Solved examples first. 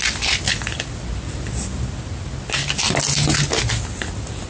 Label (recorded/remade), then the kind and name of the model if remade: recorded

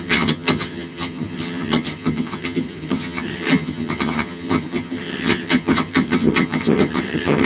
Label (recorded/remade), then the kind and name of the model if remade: remade, vocoder, HiFi-GAN